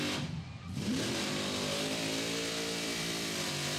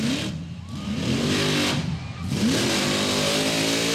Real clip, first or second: second